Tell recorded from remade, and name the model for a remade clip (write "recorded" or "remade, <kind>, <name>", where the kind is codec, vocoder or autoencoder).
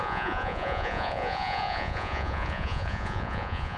remade, vocoder, Vocos